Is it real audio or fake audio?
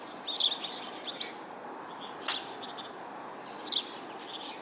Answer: real